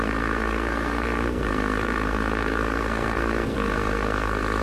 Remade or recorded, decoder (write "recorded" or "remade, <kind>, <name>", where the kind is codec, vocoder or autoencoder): remade, codec, SNAC